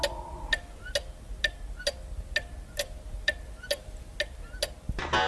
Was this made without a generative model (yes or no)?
yes